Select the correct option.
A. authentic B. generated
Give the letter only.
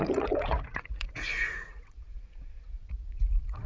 B